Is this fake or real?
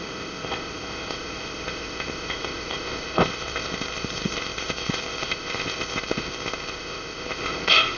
fake